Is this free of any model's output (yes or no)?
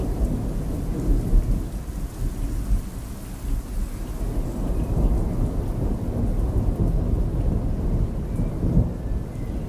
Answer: yes